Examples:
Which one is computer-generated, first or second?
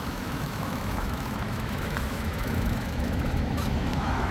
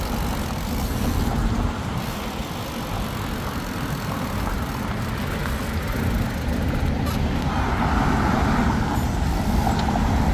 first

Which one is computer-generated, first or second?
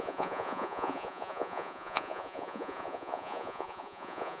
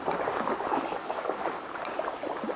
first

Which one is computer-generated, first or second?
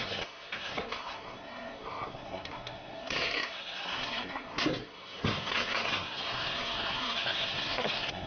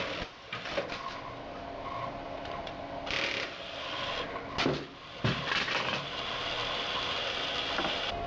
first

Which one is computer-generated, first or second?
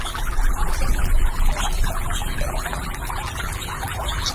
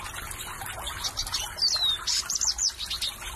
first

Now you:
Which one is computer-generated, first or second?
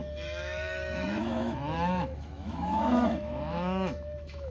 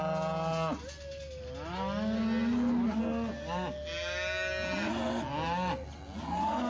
first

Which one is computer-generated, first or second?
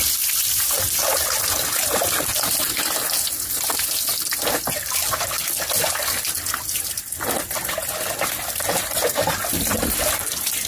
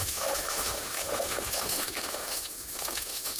second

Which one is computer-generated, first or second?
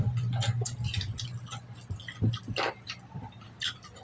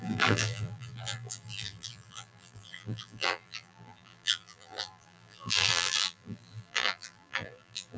second